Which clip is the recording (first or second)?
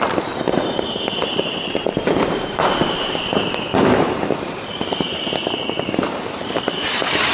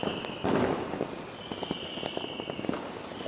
second